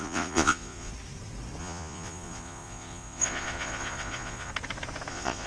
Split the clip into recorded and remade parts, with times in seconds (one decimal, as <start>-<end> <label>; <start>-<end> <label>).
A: 0.0-0.9 remade; 0.9-1.6 recorded; 1.6-4.5 remade; 4.5-5.1 recorded; 5.1-5.5 remade